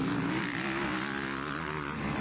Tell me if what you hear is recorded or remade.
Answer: recorded